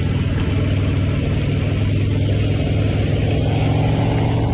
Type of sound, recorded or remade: recorded